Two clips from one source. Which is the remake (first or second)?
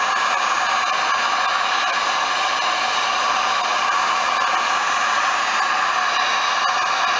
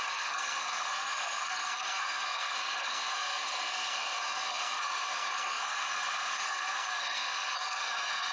second